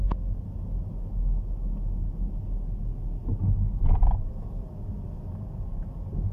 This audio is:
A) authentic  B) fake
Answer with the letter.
A